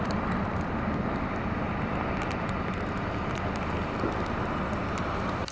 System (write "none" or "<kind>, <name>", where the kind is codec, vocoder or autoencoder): vocoder, BigVGAN v2